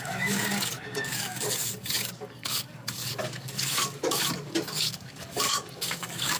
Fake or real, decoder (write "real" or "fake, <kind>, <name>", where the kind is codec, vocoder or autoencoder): fake, codec, DAC